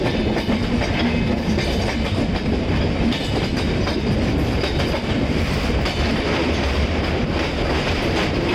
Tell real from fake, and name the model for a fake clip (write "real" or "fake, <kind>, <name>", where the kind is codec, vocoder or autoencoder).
real